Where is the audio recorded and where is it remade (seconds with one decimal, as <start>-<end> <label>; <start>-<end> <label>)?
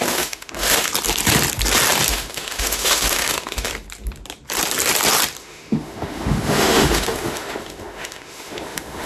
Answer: 0.0-0.9 remade; 0.9-2.1 recorded; 2.1-3.7 remade; 3.7-5.4 recorded; 5.4-9.1 remade